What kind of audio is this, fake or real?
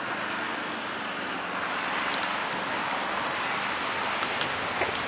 real